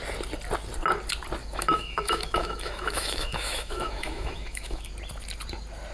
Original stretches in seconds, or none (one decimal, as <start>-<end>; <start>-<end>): 0.0-1.4; 4.9-5.9